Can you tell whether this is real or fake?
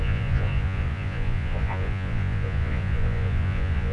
fake